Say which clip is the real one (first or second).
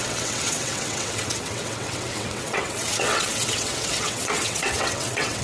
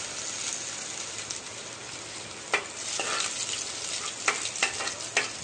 second